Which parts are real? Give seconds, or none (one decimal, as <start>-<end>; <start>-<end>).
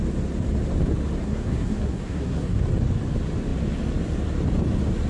0.0-1.2; 2.6-5.1